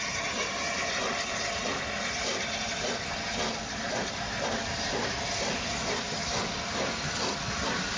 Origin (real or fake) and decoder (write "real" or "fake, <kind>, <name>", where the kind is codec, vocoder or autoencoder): real